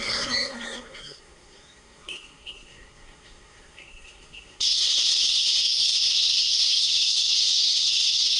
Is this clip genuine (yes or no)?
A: no